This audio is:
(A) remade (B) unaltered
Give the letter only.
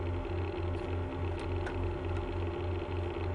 B